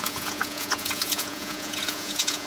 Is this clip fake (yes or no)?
yes